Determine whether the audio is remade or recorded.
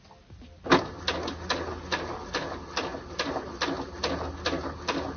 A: recorded